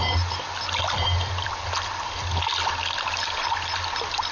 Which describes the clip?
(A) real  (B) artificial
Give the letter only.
A